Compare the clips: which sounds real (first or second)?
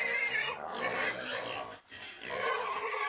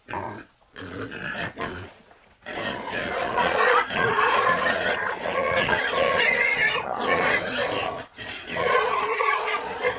first